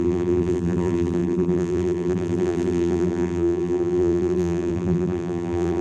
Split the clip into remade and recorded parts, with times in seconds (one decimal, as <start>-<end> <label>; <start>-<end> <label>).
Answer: 0.0-5.8 remade

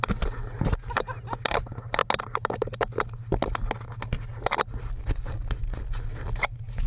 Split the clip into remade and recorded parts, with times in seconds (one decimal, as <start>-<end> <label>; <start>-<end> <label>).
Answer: 0.0-6.9 recorded

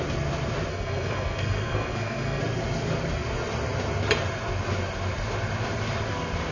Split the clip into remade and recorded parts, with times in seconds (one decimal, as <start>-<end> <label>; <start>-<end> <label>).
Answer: 0.0-0.7 recorded; 0.7-2.4 remade; 2.4-6.5 recorded

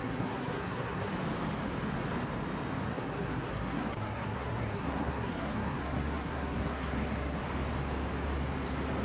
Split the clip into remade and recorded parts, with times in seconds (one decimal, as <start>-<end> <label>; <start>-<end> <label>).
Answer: 0.0-1.1 remade; 1.1-2.9 recorded; 2.9-7.4 remade; 7.4-9.0 recorded